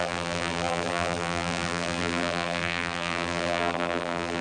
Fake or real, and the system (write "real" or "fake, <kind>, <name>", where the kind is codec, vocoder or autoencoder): fake, vocoder, BigVGAN v2